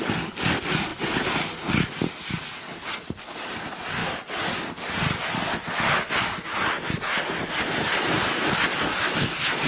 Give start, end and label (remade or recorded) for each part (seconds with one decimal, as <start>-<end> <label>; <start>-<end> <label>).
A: 0.0-9.7 recorded